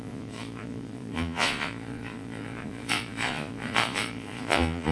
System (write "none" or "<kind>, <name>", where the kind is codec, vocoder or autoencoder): vocoder, Vocos